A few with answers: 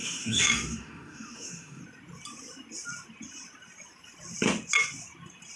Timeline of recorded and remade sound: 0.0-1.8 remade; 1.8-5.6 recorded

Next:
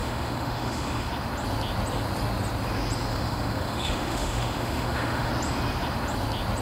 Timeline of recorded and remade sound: 0.0-1.1 remade; 1.1-3.1 recorded; 3.1-5.3 remade; 5.3-6.6 recorded

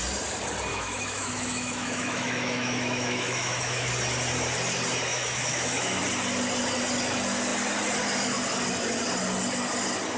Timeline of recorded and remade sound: 0.0-0.7 recorded; 0.7-3.9 remade; 3.9-5.1 recorded; 5.1-6.0 remade; 6.0-10.2 recorded

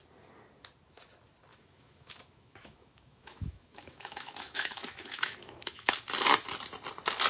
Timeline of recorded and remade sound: 0.0-1.5 recorded; 1.5-5.9 remade; 5.9-7.3 recorded

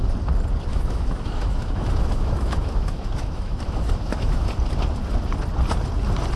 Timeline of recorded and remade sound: 0.0-0.7 recorded; 0.7-4.5 remade; 4.5-6.4 recorded

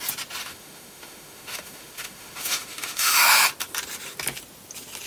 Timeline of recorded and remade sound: 0.0-0.4 recorded; 0.4-3.5 remade; 3.5-5.1 recorded